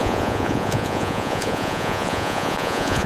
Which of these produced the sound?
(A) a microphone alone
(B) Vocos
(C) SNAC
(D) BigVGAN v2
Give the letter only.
B